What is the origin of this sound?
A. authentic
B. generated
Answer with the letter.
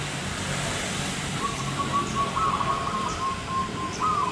B